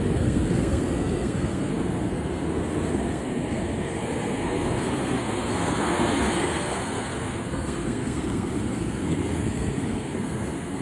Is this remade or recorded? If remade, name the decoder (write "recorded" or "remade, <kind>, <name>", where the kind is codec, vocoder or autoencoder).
remade, codec, SNAC